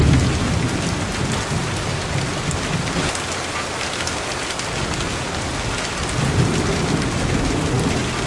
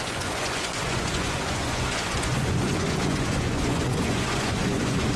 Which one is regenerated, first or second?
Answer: second